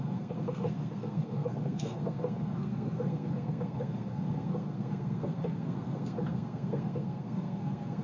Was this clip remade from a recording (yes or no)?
yes